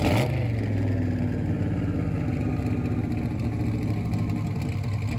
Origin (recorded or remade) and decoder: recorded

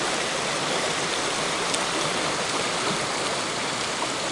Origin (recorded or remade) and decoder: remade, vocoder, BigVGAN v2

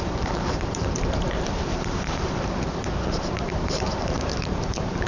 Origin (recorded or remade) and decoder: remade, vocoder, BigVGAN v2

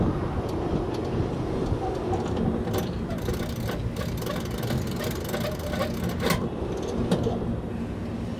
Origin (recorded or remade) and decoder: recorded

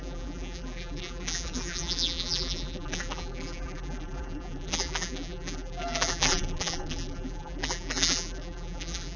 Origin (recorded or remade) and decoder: remade, vocoder, BigVGAN v2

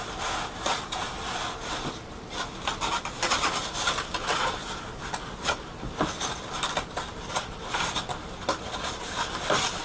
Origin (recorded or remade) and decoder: recorded